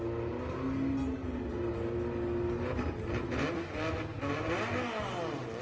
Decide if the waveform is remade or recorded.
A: recorded